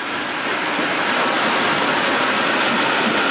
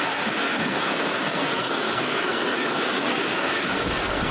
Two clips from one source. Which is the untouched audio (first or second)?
first